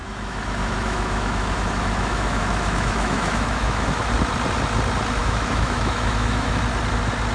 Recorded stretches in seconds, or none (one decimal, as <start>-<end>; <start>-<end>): 4.1-5.2; 6.6-7.3